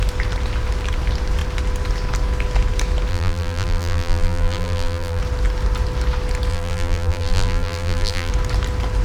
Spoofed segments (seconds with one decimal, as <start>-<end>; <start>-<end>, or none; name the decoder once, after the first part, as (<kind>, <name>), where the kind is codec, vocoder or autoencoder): 3.1-5.2 (vocoder, BigVGAN v2); 6.5-8.3